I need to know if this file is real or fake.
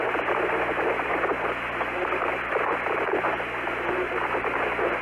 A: real